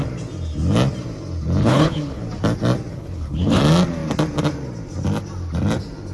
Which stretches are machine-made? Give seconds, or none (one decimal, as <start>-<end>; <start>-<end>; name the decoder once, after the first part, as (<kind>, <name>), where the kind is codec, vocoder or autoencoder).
1.6-2.2 (codec, HILCodec); 2.9-3.6